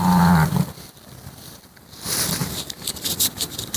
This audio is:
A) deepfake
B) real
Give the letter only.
A